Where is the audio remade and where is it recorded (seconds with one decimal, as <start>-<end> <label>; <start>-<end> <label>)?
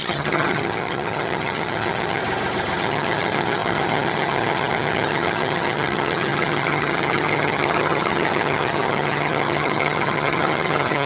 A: 0.0-2.2 remade; 2.2-2.8 recorded; 2.8-11.1 remade